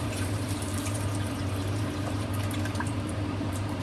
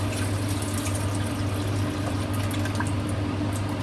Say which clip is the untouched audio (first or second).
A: second